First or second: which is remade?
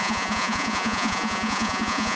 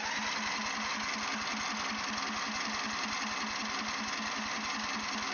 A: first